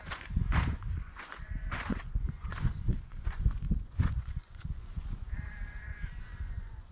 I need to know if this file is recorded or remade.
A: remade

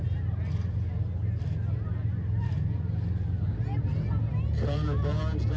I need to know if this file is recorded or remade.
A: recorded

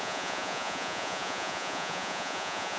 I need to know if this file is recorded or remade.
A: remade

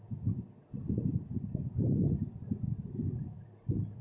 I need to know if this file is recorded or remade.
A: recorded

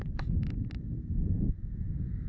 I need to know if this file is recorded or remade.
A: recorded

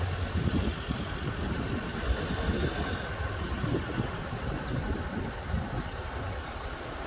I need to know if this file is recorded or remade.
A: recorded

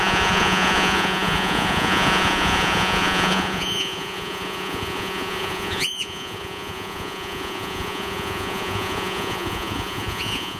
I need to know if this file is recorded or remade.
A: remade